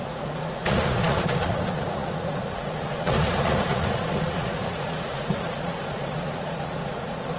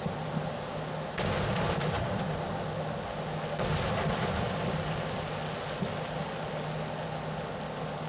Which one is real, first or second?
second